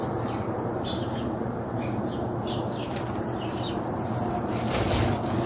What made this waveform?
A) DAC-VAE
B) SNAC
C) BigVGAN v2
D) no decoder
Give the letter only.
D